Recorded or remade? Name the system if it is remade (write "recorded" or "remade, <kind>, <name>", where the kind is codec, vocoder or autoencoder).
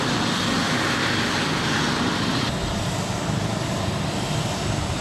recorded